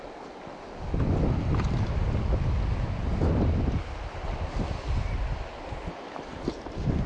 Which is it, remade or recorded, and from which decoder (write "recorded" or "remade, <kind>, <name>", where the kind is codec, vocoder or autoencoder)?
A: recorded